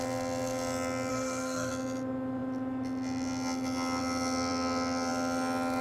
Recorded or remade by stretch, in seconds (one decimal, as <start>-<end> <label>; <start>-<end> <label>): 0.0-1.1 recorded; 1.1-1.7 remade; 1.7-5.8 recorded